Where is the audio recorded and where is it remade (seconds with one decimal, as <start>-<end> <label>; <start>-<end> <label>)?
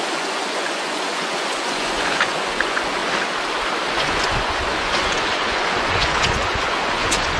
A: 0.0-3.0 remade; 3.0-3.9 recorded; 3.9-7.4 remade